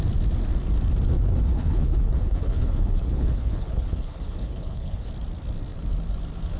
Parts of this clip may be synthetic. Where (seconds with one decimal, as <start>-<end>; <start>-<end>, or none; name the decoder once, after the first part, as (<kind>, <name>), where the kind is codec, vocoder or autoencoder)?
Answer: 1.5-5.1 (codec, HILCodec)